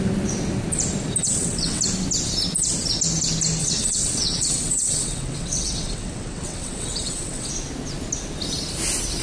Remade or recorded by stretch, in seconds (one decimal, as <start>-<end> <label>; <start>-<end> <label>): 0.0-1.2 recorded; 1.2-1.8 remade; 1.8-3.6 recorded; 3.6-7.5 remade; 7.5-9.2 recorded